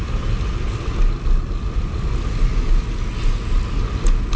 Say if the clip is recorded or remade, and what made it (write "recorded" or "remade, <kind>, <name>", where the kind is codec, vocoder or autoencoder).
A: recorded